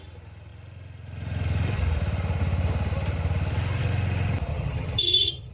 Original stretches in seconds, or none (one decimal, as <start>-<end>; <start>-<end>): 0.0-4.5